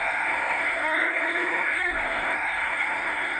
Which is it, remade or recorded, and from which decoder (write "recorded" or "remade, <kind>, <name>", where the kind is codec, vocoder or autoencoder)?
remade, codec, SNAC